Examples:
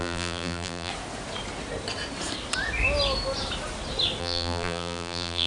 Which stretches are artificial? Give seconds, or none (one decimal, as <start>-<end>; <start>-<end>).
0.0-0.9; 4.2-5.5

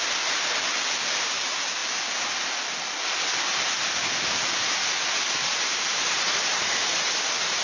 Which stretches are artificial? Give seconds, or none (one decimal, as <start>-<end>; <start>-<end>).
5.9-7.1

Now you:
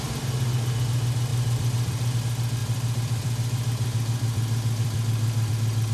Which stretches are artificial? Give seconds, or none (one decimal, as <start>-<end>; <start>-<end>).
1.3-2.2; 2.6-5.5

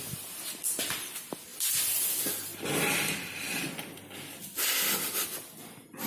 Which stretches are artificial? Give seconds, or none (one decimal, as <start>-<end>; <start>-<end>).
none

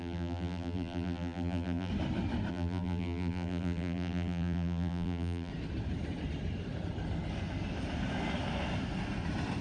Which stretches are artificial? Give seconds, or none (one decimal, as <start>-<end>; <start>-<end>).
0.0-1.9; 2.5-5.5

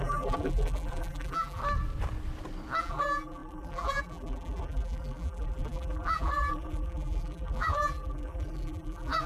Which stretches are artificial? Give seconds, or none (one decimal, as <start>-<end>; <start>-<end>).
0.0-1.6; 2.8-9.3